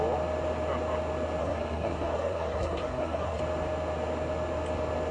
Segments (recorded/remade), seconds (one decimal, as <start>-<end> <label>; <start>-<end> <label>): 0.0-1.4 recorded; 1.4-3.4 remade; 3.4-5.1 recorded